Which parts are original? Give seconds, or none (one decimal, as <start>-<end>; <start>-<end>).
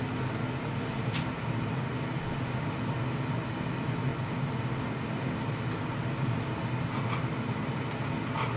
0.0-8.6